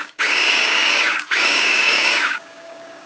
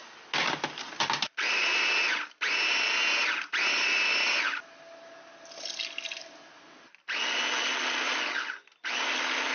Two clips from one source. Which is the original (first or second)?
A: second